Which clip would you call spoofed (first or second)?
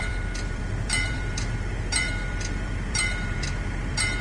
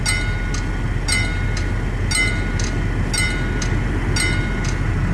first